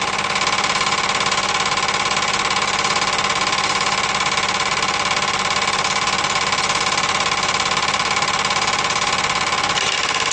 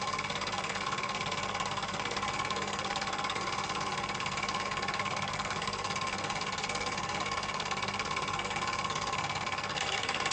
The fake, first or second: second